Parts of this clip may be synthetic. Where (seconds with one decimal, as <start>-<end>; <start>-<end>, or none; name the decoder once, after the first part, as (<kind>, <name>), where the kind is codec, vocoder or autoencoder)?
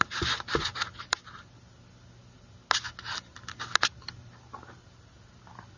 none